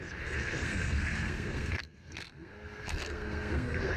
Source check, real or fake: fake